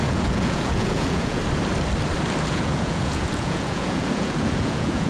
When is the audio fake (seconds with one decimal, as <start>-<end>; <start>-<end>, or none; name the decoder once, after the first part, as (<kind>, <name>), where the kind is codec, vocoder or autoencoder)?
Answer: 0.0-1.4 (vocoder, Vocos); 2.5-5.1